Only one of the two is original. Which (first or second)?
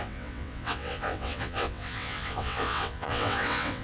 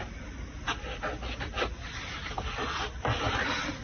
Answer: second